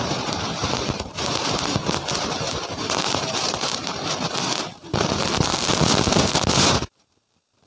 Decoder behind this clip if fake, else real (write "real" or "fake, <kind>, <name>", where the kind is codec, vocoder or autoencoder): fake, vocoder, BigVGAN v2